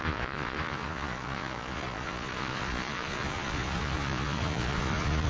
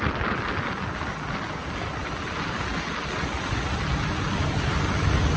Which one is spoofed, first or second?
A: first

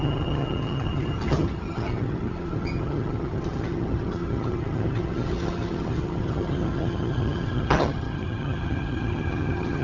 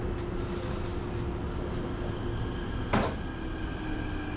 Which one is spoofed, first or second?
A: first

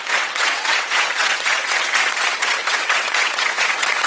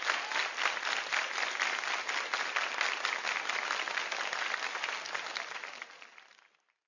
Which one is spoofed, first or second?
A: first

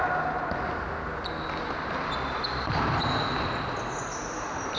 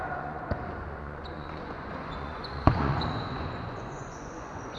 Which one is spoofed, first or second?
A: second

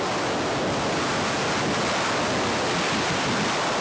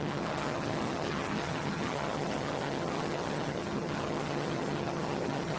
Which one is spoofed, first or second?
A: second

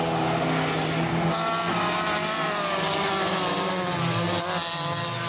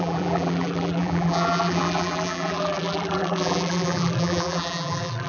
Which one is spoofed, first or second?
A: second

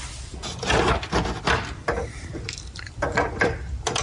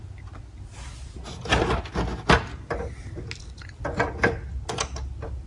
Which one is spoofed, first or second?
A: first